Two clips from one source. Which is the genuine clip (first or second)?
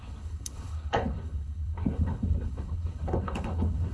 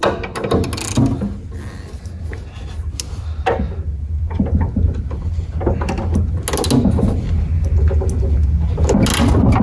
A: second